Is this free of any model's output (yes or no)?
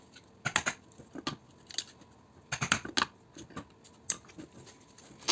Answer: yes